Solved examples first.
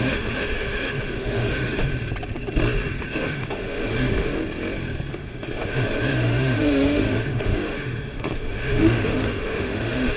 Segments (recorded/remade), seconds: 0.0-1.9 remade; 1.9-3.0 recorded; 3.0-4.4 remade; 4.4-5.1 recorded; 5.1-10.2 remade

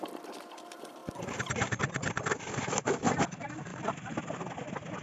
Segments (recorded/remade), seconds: 0.0-5.0 recorded